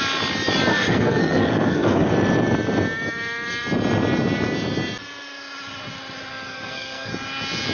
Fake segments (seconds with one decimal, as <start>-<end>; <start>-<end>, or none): 0.7-2.1; 6.3-7.1